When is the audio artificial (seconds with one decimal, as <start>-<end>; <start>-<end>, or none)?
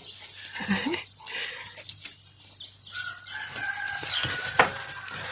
3.6-4.7